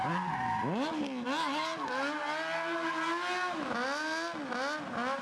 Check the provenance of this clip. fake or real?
real